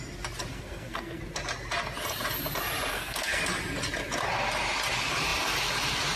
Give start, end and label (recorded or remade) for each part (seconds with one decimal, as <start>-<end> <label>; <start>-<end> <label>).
0.0-0.5 recorded; 0.5-1.2 remade; 1.2-2.9 recorded; 2.9-3.4 remade; 3.4-6.2 recorded

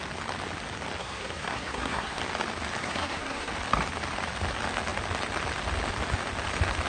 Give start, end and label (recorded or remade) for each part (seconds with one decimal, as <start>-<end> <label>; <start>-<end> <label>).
0.0-1.0 recorded; 1.0-2.2 remade; 2.2-2.8 recorded; 2.8-3.5 remade; 3.5-6.9 recorded

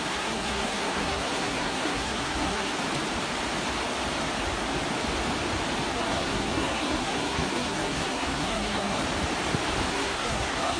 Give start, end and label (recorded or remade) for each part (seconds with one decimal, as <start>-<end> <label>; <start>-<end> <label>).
0.0-2.7 remade; 2.7-5.9 recorded; 5.9-9.0 remade; 9.0-9.9 recorded; 9.9-10.8 remade

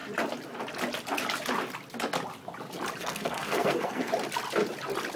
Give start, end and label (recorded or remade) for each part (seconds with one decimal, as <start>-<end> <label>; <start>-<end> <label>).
0.0-3.0 recorded; 3.0-4.1 remade; 4.1-5.2 recorded

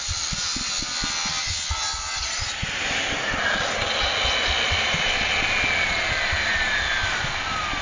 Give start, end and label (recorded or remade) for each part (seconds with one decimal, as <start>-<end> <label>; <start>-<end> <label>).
0.0-7.8 recorded

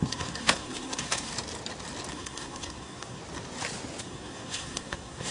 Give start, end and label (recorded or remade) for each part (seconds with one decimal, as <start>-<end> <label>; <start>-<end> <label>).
0.0-1.3 remade; 1.3-2.1 recorded; 2.1-3.2 remade; 3.2-4.0 recorded; 4.0-5.3 remade